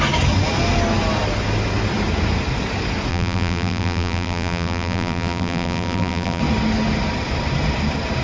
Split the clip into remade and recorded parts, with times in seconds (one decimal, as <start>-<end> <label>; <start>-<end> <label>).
0.0-3.1 recorded; 3.1-6.4 remade; 6.4-8.2 recorded